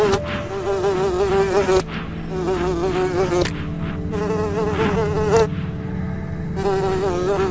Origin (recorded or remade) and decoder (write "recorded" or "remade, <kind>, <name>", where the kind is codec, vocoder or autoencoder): recorded